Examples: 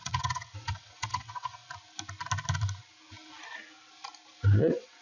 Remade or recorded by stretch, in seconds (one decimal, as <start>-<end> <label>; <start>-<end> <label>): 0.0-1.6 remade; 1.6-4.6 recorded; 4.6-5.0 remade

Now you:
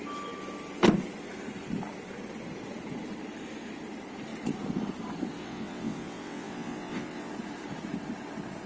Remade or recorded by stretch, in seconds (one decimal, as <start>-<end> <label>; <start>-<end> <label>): 0.0-5.4 recorded; 5.4-7.3 remade; 7.3-8.7 recorded

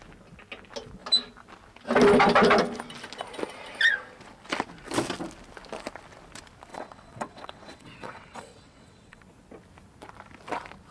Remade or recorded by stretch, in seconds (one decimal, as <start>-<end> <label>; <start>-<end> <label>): 0.0-6.7 recorded; 6.7-9.2 remade; 9.2-10.9 recorded